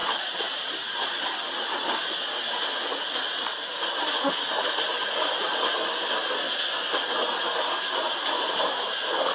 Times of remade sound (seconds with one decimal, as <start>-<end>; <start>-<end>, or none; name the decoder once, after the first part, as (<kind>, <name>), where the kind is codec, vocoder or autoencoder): 0.0-0.7 (vocoder, Vocos); 3.5-4.3; 5.0-5.6